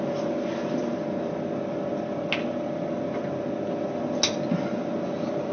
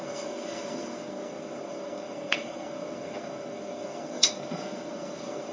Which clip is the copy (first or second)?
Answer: second